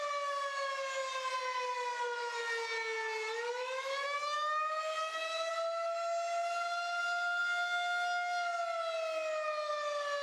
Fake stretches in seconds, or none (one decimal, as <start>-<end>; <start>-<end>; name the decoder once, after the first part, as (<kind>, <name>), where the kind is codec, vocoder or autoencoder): 3.5-5.5 (autoencoder, DAC-VAE)